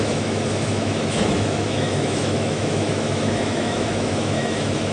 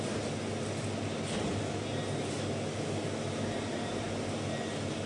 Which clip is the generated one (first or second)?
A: first